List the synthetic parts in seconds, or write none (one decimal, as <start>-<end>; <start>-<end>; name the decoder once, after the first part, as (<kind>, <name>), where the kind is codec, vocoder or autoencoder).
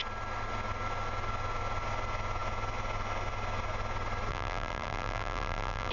4.3-5.9 (vocoder, BigVGAN v2)